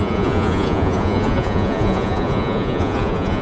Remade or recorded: remade